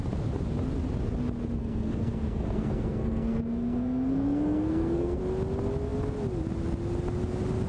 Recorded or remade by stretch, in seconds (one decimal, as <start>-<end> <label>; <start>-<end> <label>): 0.0-1.6 recorded; 1.6-5.2 remade; 5.2-7.7 recorded